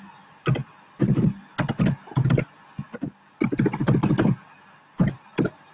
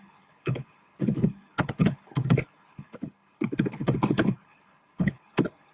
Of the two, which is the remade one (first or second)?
second